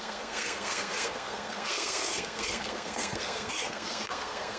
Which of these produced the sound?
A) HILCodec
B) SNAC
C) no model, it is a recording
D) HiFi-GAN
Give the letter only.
B